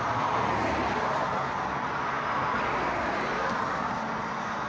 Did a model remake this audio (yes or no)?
no